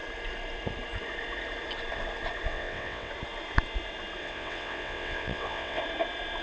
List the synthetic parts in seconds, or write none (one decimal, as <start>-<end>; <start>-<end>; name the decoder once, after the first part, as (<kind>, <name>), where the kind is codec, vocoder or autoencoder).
2.5-3.1 (vocoder, WaveNeXt); 4.2-5.8